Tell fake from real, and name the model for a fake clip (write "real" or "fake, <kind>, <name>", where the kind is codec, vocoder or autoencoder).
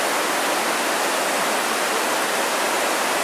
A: real